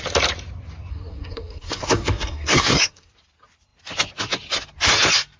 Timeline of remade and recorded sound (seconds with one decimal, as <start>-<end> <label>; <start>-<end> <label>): 0.0-0.9 recorded; 0.9-3.1 remade; 3.1-5.4 recorded